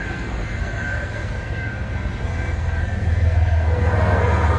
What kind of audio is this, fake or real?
fake